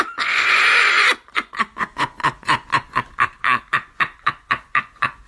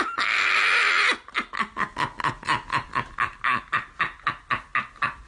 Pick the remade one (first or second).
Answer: first